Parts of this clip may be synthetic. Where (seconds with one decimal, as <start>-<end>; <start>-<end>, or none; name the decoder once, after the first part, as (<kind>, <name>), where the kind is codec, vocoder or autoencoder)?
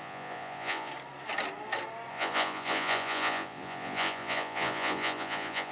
0.0-0.9 (vocoder, Vocos); 2.1-5.7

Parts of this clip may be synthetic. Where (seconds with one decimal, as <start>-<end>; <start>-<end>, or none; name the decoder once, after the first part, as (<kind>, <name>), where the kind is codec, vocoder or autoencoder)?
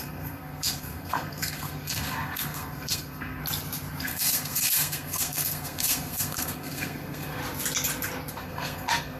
0.0-3.4 (codec, SNAC); 4.0-7.4; 8.3-9.2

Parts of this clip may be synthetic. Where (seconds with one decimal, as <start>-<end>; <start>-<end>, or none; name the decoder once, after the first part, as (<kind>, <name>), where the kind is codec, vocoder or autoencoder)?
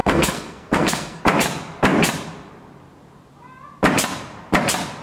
0.0-1.2 (codec, SNAC)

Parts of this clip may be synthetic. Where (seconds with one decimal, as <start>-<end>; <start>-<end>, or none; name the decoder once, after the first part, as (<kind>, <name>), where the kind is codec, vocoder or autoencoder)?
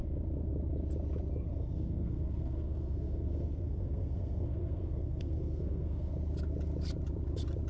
1.5-6.1 (codec, SNAC)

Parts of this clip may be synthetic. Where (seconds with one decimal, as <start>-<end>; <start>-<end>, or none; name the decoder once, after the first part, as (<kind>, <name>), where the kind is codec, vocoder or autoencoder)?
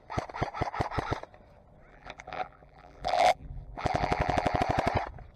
1.9-4.6 (vocoder, BigVGAN v2)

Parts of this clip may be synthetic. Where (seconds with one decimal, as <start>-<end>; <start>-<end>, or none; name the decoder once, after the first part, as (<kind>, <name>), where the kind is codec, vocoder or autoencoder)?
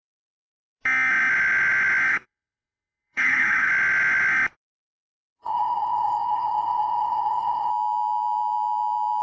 2.1-3.7 (codec, HILCodec); 5.4-7.7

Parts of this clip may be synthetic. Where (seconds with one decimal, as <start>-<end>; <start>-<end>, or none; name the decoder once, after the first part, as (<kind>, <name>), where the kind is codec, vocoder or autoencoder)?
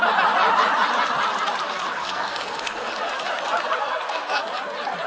1.9-2.9 (codec, SNAC); 3.8-4.4